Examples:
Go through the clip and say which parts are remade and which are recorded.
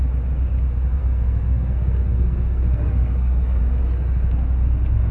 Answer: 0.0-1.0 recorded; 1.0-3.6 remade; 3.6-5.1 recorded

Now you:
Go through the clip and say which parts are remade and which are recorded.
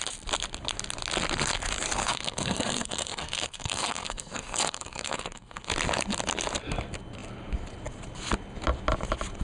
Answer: 0.0-2.0 recorded; 2.0-5.7 remade; 5.7-9.4 recorded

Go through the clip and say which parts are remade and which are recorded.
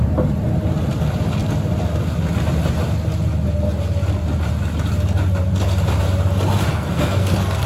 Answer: 0.0-6.7 recorded; 6.7-7.7 remade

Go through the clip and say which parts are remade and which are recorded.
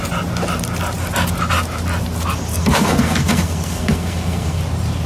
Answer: 0.0-2.5 recorded; 2.5-4.6 remade; 4.6-5.1 recorded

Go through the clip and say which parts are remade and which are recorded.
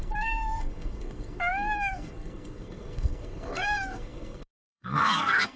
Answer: 0.0-5.6 remade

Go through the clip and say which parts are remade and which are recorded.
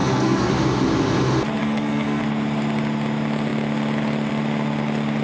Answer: 0.0-0.5 remade; 0.5-1.6 recorded; 1.6-2.2 remade; 2.2-5.2 recorded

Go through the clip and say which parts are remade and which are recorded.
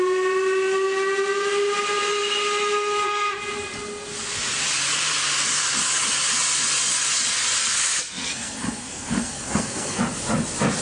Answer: 0.0-7.6 recorded; 7.6-10.0 remade; 10.0-10.8 recorded